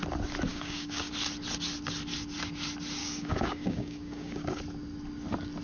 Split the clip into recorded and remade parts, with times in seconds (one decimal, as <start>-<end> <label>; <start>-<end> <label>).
0.0-0.5 recorded; 0.5-1.1 remade; 1.1-3.0 recorded; 3.0-4.6 remade; 4.6-5.6 recorded